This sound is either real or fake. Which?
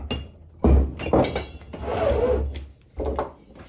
real